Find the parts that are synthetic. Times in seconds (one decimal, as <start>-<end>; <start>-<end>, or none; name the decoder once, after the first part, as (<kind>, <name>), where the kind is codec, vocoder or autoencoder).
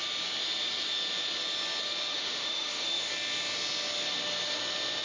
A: 2.1-3.1 (autoencoder, DAC-VAE)